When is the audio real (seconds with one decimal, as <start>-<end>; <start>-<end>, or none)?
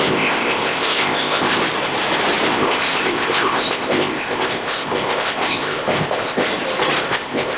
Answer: 1.6-2.5; 6.5-7.0